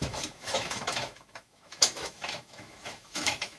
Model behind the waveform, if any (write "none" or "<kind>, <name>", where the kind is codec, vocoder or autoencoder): autoencoder, DAC-VAE